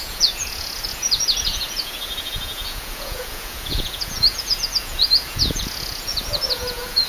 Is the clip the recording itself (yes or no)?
no